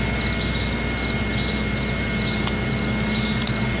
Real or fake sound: real